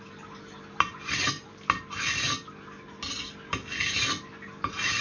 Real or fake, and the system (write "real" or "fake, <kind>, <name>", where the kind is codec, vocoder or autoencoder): real